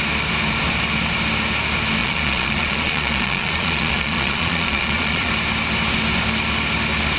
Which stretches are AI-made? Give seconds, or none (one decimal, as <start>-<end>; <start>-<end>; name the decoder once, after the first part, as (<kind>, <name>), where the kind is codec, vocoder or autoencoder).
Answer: 2.0-5.3 (vocoder, Vocos)